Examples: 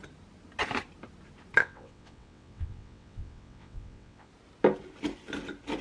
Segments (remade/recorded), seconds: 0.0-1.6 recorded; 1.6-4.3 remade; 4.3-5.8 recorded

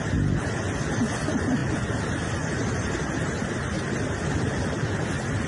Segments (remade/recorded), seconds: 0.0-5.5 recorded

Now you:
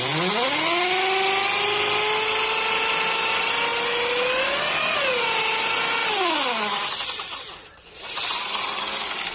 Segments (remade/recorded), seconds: 0.0-9.3 recorded